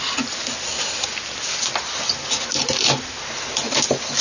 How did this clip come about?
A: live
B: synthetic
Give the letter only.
A